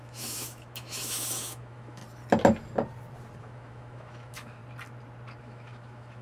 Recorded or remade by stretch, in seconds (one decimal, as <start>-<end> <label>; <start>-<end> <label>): 0.0-2.0 remade; 2.0-3.4 recorded; 3.4-4.6 remade; 4.6-5.4 recorded; 5.4-6.2 remade